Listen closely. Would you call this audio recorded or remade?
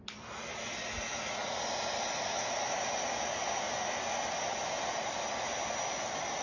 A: recorded